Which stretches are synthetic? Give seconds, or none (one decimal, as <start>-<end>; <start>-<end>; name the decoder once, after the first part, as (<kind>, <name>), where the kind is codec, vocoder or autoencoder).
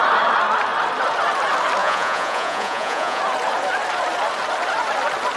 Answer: 1.8-3.2 (vocoder, Vocos)